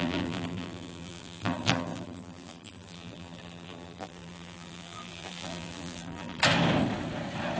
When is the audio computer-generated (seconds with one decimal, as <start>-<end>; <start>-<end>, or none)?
0.0-6.4